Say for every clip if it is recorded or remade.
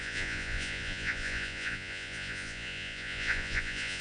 remade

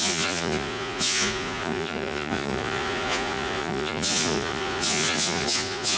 remade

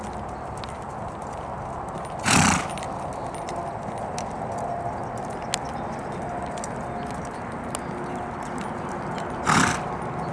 recorded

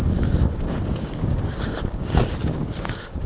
remade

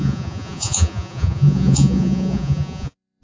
remade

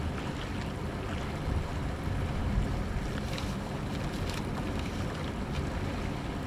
recorded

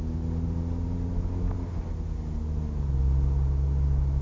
recorded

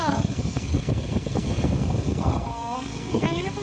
remade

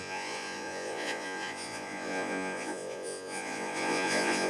remade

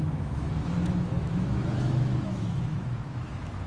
remade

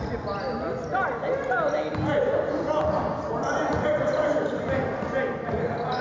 recorded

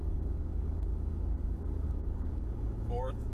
remade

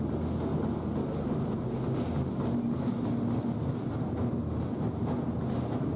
recorded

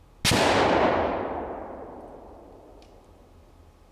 recorded